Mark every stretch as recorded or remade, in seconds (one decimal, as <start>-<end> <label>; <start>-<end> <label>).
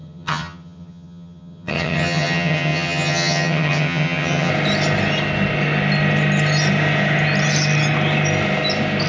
0.0-4.5 remade; 4.5-9.1 recorded